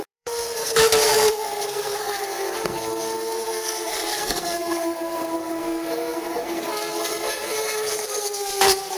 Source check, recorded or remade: remade